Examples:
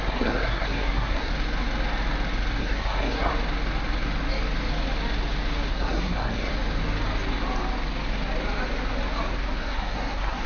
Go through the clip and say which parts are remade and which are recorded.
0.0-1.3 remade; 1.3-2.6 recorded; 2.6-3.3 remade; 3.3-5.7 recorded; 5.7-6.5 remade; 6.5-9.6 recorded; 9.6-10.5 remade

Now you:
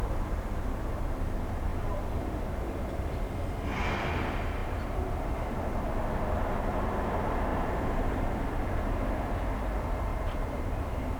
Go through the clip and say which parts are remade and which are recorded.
0.0-4.6 recorded; 4.6-5.1 remade; 5.1-7.5 recorded; 7.5-8.1 remade; 8.1-10.1 recorded; 10.1-11.2 remade

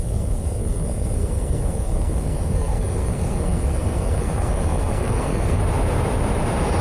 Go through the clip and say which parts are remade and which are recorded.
0.0-5.6 remade; 5.6-6.8 recorded

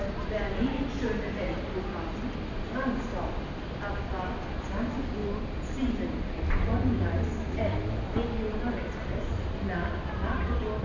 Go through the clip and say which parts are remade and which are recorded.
0.0-10.8 recorded

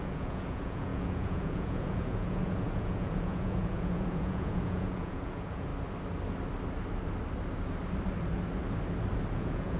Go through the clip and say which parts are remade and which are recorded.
0.0-5.7 remade; 5.7-9.3 recorded; 9.3-9.8 remade